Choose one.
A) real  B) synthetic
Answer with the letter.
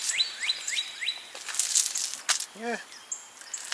A